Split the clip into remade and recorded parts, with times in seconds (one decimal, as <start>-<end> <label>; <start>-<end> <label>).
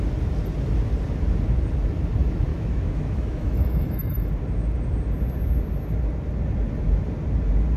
0.0-2.5 recorded; 2.5-4.3 remade; 4.3-7.8 recorded